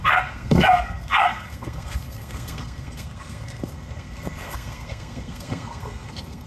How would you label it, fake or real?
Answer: fake